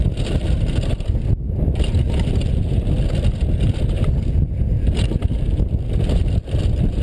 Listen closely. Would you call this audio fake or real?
real